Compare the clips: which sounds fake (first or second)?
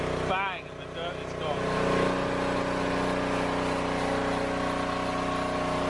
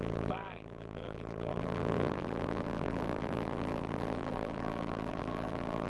second